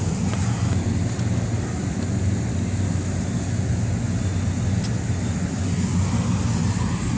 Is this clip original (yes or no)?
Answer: yes